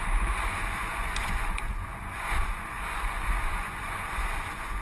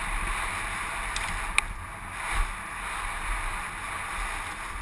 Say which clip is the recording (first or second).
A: second